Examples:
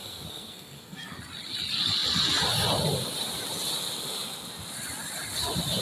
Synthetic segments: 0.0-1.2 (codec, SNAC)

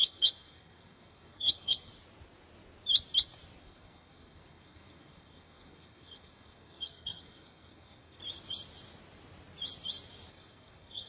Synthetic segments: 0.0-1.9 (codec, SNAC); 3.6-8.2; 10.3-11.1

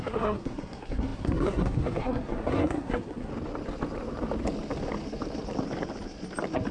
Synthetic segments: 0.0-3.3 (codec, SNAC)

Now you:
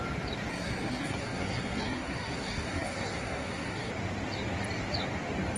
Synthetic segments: 0.5-3.9 (codec, SNAC)

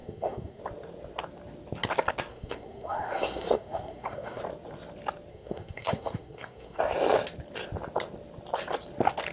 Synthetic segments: 0.0-0.6 (codec, SNAC); 2.3-4.4; 5.3-6.8

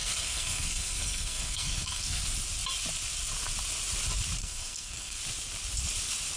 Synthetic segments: 0.0-2.2 (codec, SNAC); 4.4-5.2